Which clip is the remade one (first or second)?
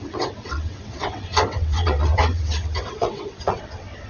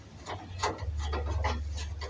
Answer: first